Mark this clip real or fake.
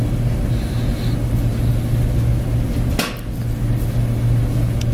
real